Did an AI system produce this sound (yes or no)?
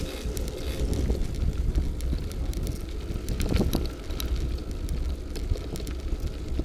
no